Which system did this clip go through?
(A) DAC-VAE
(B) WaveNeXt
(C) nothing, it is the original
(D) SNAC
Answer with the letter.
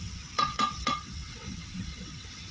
B